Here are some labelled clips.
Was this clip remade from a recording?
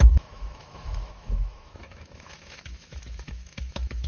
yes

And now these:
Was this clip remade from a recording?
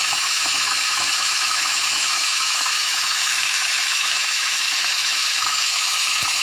yes